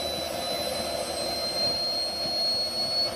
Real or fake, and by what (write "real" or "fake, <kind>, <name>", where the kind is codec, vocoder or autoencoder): real